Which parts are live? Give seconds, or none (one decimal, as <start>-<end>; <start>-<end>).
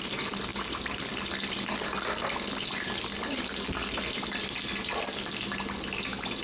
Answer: 0.0-0.5; 1.1-6.4